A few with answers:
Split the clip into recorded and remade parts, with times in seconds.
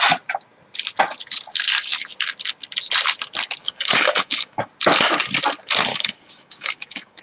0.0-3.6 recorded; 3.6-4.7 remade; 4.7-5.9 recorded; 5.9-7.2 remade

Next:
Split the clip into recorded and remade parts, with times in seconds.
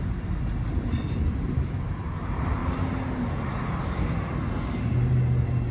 0.0-5.7 recorded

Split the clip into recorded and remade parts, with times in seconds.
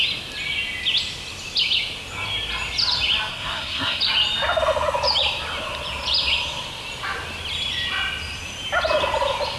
0.0-3.3 recorded; 3.3-4.0 remade; 4.0-9.6 recorded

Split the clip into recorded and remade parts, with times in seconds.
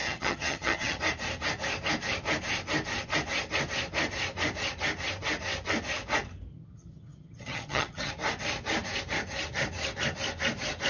0.0-1.0 remade; 1.0-6.5 recorded; 6.5-8.1 remade; 8.1-10.9 recorded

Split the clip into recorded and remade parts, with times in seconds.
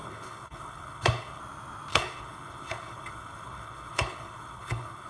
0.0-1.4 remade; 1.4-1.9 recorded; 1.9-5.1 remade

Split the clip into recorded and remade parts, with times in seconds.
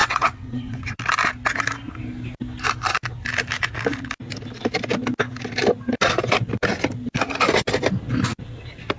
0.0-1.0 remade; 1.0-9.0 recorded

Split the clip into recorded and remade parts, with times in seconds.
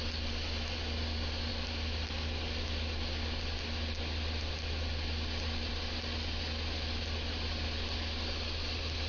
0.0-9.1 recorded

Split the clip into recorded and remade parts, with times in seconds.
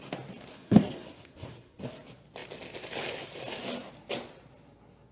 0.0-0.5 recorded; 0.5-1.8 remade; 1.8-5.1 recorded